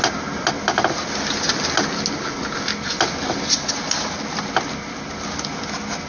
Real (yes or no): yes